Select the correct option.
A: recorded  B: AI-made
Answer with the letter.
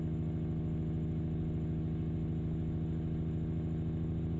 A